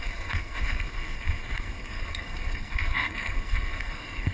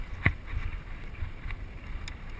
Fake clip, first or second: first